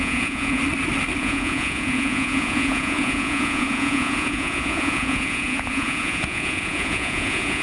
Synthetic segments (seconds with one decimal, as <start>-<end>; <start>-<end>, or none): 0.0-0.6; 1.2-7.6